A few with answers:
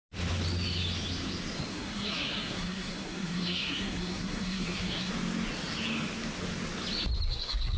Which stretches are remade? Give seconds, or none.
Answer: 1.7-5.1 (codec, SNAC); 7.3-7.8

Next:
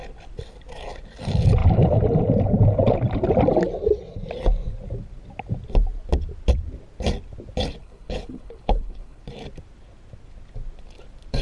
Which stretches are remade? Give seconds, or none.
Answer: 7.8-9.2 (codec, HILCodec)

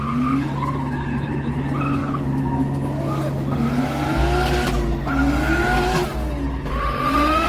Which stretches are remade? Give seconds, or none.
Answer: 6.7-7.5 (autoencoder, DAC-VAE)